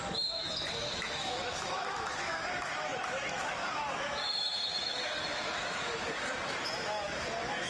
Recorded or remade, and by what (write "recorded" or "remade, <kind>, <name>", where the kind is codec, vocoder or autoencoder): remade, autoencoder, DAC-VAE